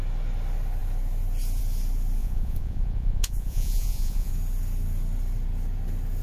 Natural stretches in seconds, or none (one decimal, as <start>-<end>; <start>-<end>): 0.0-2.2; 4.3-6.2

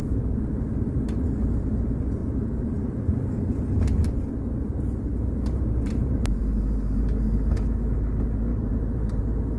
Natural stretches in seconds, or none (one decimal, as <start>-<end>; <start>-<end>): 0.0-2.2; 7.0-8.5; 9.2-9.6

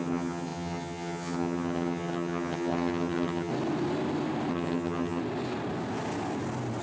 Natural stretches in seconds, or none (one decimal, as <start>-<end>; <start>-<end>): 3.5-4.5; 5.2-6.8

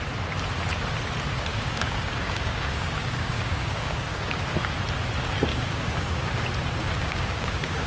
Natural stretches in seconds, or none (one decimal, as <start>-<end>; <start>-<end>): 0.0-1.5; 4.4-5.5; 6.3-6.8

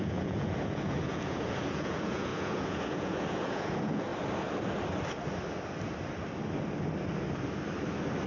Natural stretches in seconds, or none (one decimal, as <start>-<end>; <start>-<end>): 4.1-8.3

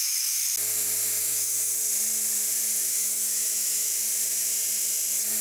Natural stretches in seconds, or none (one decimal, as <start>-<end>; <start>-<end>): 0.4-1.2; 1.7-2.9; 3.9-5.4